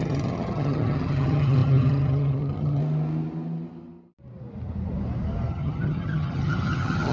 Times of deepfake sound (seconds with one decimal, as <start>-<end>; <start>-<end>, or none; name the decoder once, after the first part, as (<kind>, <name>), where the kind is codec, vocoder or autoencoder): 0.0-2.8 (vocoder, HiFi-GAN); 5.5-7.1